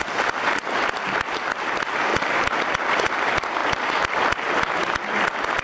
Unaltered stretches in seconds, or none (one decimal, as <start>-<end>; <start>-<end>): 0.0-2.1; 2.7-5.6